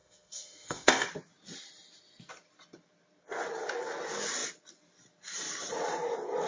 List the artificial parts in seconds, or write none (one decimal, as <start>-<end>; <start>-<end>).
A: 0.0-1.1

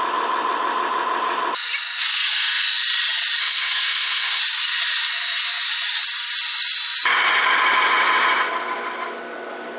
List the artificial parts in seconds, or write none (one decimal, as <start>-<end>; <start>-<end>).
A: 3.4-4.4

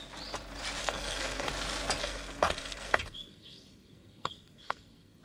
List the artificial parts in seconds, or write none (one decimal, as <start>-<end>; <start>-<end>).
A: 0.8-1.5; 2.0-5.2

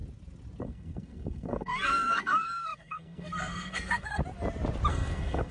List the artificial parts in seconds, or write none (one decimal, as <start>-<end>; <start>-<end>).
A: 0.6-4.2; 4.9-5.5